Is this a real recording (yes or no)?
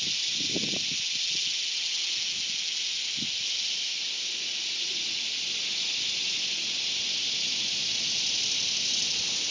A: yes